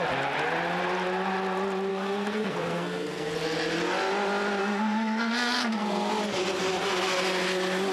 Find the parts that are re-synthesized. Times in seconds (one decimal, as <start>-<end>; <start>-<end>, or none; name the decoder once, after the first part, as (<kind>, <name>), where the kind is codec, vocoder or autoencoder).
1.9-3.3 (codec, SNAC); 4.6-6.1